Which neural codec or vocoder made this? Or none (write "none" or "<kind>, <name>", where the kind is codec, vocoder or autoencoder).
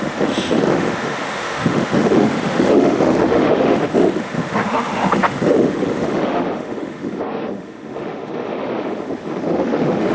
autoencoder, DAC-VAE